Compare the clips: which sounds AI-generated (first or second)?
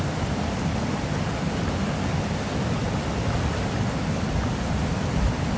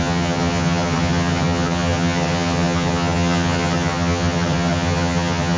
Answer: second